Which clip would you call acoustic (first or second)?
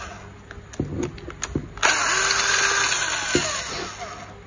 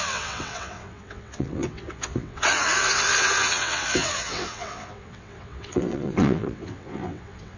first